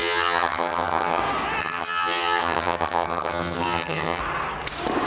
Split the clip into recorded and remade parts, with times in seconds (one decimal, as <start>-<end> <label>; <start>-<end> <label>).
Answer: 0.0-1.2 remade; 1.2-1.6 recorded; 1.6-4.2 remade; 4.2-5.1 recorded